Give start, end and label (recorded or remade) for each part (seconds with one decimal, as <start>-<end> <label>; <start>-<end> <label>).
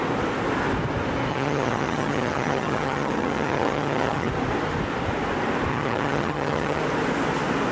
0.0-1.3 recorded; 1.3-4.3 remade; 4.3-5.7 recorded; 5.7-6.8 remade; 6.8-7.7 recorded